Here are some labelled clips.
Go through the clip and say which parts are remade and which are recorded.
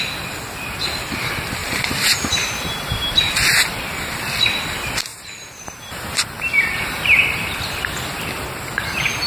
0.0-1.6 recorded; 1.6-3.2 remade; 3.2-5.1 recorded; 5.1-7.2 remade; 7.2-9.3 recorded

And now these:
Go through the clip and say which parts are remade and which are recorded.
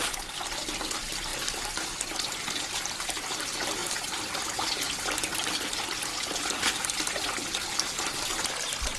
0.0-9.0 recorded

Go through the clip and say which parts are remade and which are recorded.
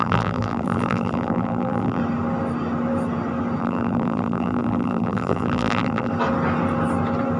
0.0-2.0 remade; 2.0-3.6 recorded; 3.6-6.1 remade; 6.1-7.4 recorded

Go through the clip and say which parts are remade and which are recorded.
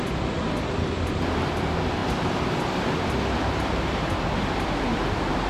0.0-5.5 remade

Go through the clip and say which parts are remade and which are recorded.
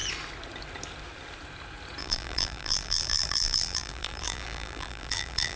0.0-2.0 recorded; 2.0-5.6 remade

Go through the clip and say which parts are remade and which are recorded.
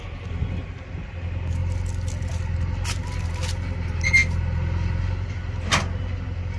0.0-6.6 recorded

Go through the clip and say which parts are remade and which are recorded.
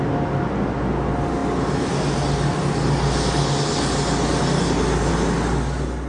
0.0-1.4 recorded; 1.4-5.1 remade; 5.1-6.1 recorded